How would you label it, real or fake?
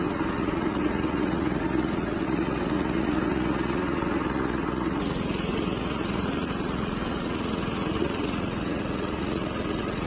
fake